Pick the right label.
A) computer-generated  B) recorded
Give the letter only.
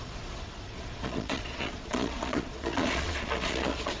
A